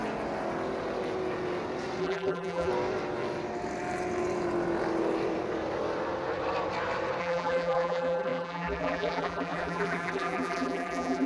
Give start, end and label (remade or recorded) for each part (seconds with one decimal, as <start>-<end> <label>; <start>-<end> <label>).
0.0-2.0 recorded; 2.0-2.7 remade; 2.7-7.2 recorded; 7.2-11.3 remade